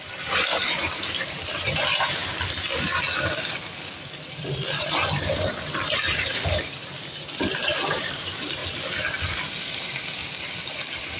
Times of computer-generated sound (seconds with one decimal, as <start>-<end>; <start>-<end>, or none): 0.0-2.2; 7.4-8.6; 9.7-10.2